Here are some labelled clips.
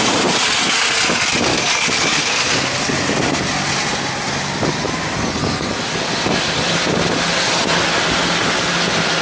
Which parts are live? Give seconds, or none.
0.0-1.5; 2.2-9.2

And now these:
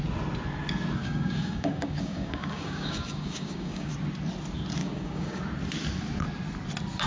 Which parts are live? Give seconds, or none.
0.0-1.0; 3.9-4.8; 5.4-7.1

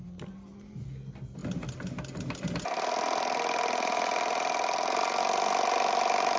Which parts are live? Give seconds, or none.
0.0-6.4

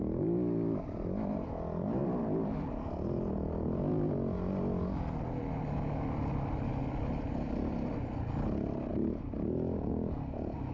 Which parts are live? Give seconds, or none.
0.0-10.7